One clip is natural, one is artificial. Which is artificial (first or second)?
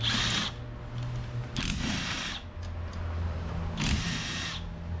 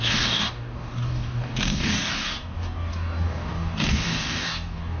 second